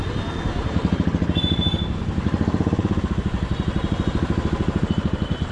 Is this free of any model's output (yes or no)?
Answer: yes